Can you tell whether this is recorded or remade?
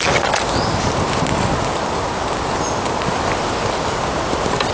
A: recorded